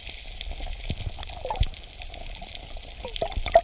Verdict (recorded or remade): recorded